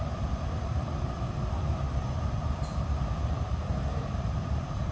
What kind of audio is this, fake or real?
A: fake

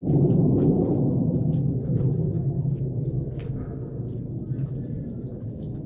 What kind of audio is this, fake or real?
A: real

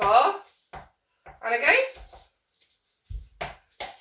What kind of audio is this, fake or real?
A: real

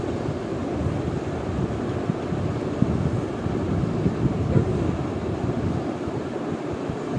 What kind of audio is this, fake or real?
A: real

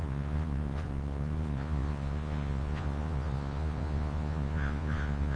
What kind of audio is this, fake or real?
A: fake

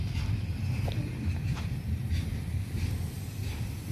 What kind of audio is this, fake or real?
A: real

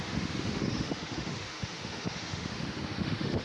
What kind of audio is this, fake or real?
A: fake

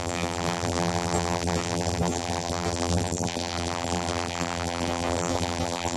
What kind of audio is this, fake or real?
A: fake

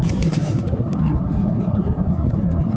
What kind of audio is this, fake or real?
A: fake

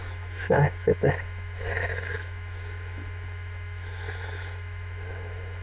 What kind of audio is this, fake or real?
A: fake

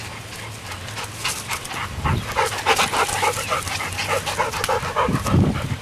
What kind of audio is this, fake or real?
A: real